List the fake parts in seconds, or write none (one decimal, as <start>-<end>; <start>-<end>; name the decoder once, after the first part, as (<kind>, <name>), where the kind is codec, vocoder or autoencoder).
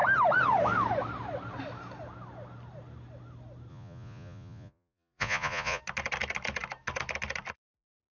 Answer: 3.7-5.8 (vocoder, Vocos)